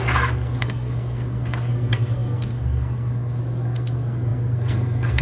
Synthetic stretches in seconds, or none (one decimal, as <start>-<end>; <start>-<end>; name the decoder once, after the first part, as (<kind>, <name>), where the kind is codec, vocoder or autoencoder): 0.0-5.2 (codec, SNAC)